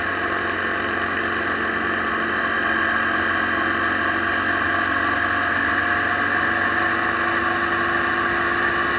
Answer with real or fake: real